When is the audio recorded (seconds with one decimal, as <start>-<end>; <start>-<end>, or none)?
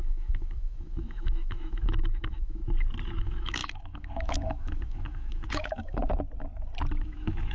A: 2.6-3.2; 6.0-7.0